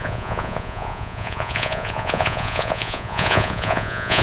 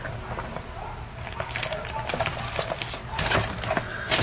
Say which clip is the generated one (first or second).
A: first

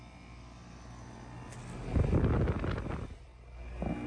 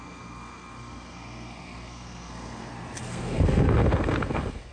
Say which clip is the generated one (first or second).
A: second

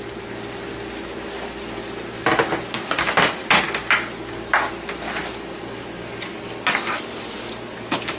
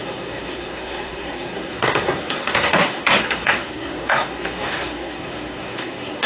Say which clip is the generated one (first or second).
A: second